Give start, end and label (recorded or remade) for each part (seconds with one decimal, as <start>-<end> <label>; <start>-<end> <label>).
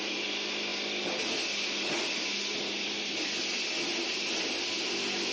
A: 0.0-5.3 recorded